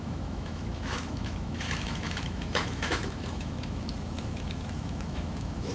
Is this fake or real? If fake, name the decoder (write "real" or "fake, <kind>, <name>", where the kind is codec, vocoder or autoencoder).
fake, autoencoder, DAC-VAE